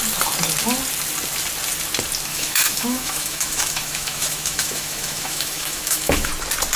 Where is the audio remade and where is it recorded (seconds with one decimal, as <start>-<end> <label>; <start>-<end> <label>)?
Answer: 0.0-2.3 recorded; 2.3-6.3 remade; 6.3-6.8 recorded